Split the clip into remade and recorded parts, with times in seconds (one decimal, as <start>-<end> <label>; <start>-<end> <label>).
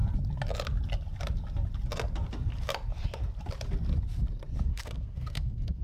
0.0-4.7 recorded; 4.7-5.8 remade